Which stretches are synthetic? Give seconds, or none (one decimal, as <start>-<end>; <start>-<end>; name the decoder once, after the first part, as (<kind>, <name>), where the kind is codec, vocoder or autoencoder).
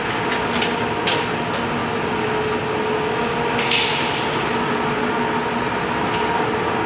none